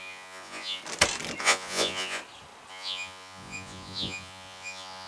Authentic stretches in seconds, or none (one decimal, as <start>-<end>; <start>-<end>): 0.8-1.4; 2.2-2.7